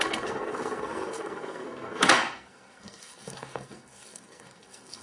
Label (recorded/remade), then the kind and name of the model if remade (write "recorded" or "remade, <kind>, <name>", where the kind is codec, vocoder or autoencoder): remade, codec, SNAC